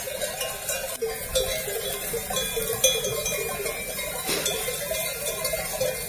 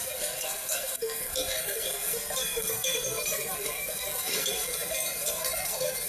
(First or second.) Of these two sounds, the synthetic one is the second